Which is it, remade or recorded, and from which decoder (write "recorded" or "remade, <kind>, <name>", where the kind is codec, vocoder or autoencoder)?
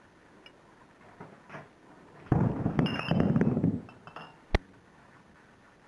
recorded